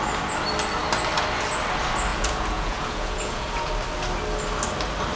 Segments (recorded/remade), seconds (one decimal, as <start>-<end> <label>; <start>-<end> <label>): 0.0-2.1 recorded; 2.1-3.7 remade; 3.7-5.2 recorded